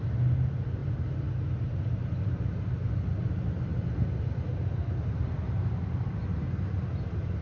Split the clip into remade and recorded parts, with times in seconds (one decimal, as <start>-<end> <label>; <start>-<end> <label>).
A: 0.0-0.8 recorded; 0.8-1.4 remade; 1.4-7.4 recorded